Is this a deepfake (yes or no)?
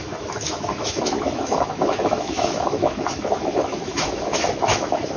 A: yes